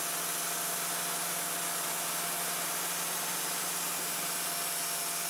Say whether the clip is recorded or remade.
recorded